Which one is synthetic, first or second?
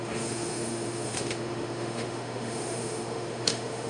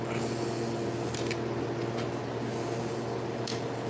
first